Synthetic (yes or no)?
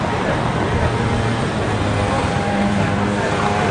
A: no